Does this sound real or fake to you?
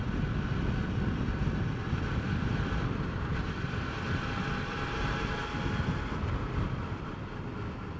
real